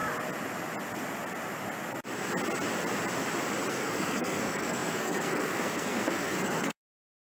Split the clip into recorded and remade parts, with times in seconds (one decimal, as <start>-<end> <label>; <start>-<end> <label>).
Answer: 0.0-3.7 recorded; 3.7-7.4 remade